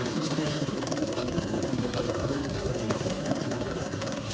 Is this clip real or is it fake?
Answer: fake